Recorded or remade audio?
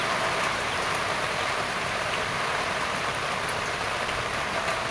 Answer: remade